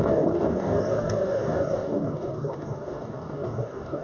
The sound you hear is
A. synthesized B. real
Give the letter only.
A